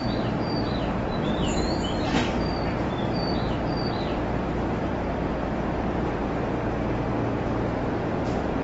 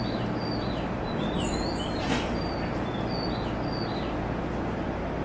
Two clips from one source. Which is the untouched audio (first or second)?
second